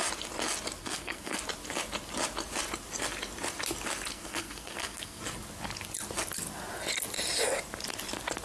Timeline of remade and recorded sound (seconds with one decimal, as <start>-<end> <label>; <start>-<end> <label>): 0.0-0.8 recorded; 0.8-1.4 remade; 1.4-4.1 recorded; 4.1-5.2 remade; 5.2-8.4 recorded